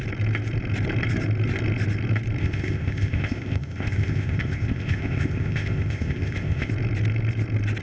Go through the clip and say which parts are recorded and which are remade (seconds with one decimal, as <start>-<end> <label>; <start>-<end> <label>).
0.0-2.4 recorded; 2.4-6.7 remade; 6.7-7.8 recorded